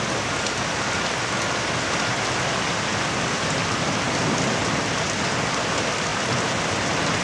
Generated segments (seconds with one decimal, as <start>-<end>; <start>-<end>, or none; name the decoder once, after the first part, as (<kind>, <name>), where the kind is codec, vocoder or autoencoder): none